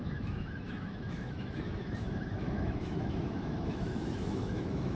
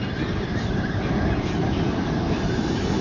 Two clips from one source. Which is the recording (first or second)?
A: second